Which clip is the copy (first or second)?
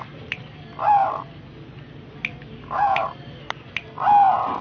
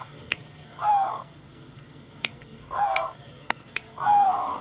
second